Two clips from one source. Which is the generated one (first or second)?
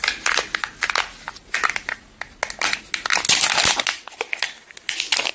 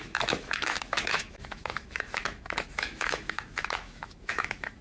second